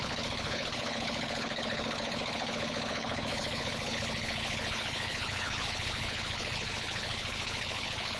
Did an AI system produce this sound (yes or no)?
yes